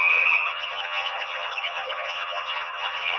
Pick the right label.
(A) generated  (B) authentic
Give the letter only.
A